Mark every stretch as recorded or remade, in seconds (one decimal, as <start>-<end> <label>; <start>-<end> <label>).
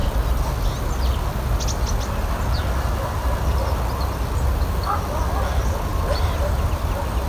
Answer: 0.0-5.9 recorded; 5.9-6.8 remade; 6.8-7.3 recorded